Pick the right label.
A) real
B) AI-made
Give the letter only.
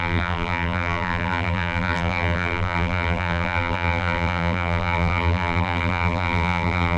B